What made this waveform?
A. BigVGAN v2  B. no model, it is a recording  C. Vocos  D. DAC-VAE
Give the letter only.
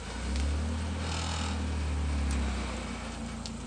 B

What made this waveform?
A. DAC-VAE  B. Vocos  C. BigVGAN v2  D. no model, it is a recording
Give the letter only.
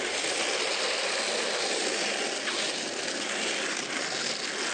D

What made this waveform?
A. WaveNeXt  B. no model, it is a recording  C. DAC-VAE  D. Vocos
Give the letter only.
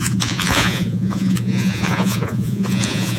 D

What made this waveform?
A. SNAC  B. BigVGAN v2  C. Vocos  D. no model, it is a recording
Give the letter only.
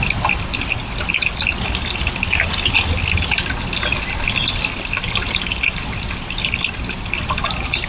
D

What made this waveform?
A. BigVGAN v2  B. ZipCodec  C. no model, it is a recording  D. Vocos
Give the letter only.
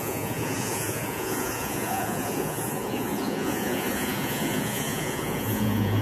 D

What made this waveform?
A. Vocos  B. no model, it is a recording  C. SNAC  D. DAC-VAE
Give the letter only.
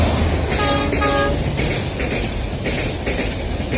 B